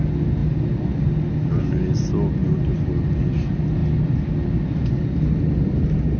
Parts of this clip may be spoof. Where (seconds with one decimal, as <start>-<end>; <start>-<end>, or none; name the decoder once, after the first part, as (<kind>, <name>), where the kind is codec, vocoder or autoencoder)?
none